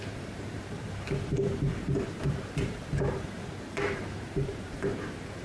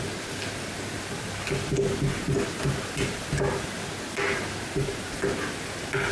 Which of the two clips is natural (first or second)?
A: second